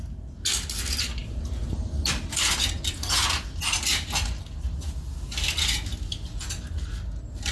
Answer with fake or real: real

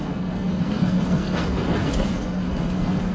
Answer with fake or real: fake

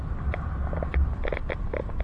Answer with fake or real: real